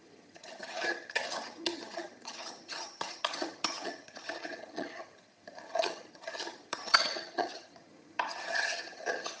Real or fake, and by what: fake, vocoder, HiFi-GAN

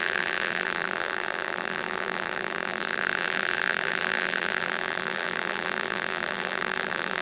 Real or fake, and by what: fake, vocoder, BigVGAN v2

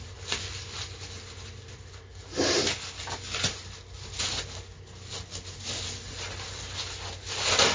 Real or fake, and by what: real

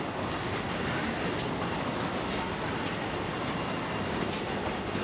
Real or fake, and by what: real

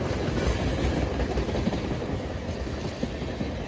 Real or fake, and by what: real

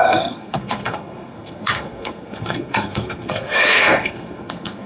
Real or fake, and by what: fake, codec, SNAC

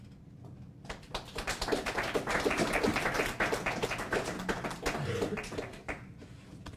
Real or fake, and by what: real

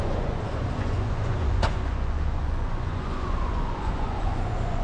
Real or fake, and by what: fake, vocoder, Vocos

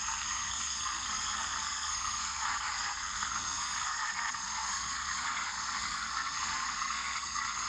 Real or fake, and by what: fake, codec, SNAC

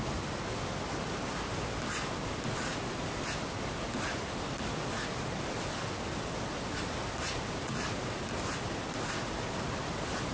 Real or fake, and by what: real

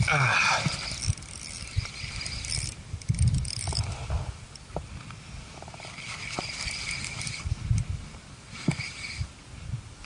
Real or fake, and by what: real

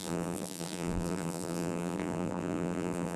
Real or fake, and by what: fake, vocoder, BigVGAN v2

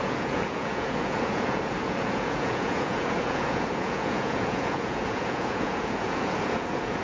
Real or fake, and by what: fake, vocoder, Vocos